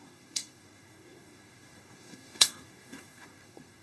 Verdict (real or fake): fake